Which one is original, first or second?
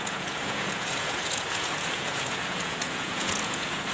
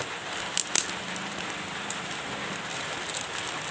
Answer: second